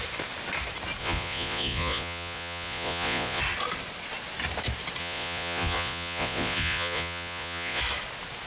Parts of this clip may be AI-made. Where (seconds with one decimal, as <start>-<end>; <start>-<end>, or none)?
1.0-3.4; 5.0-7.8